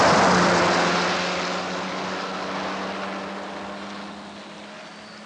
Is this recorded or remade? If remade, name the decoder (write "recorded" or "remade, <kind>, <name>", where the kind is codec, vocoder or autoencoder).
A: recorded